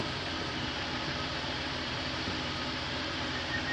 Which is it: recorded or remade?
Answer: remade